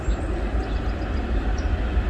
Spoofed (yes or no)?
yes